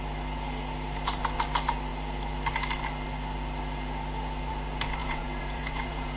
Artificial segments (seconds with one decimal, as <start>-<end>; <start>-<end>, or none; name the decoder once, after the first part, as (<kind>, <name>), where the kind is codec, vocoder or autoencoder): 5.0-6.2 (vocoder, Vocos)